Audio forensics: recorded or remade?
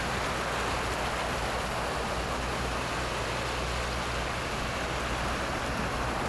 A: recorded